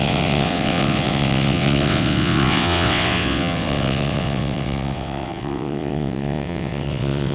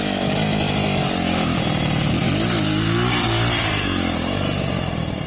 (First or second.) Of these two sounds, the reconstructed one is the first